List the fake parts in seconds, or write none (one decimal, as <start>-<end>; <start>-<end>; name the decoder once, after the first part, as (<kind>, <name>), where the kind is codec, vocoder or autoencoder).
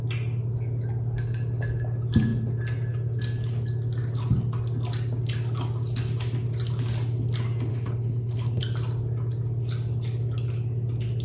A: 7.7-8.6 (codec, HILCodec)